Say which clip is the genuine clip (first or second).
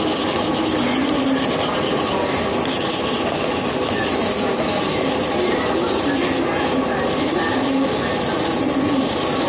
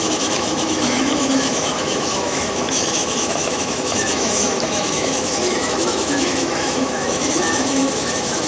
first